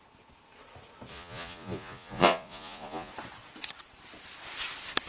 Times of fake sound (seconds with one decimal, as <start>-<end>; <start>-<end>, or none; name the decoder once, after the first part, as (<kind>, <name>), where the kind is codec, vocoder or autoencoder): 1.1-3.1 (vocoder, Vocos)